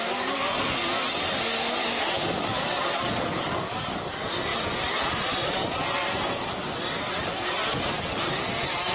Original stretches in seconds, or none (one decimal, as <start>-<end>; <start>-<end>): 0.0-1.8; 4.0-8.9